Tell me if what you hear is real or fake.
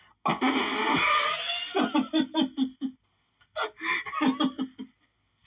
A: real